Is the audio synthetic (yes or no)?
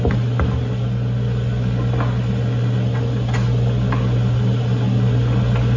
no